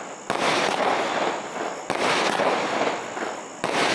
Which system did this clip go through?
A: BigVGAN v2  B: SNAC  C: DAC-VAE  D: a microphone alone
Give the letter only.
D